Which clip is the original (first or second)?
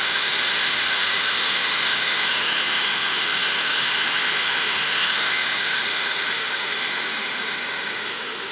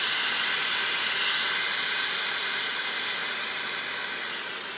second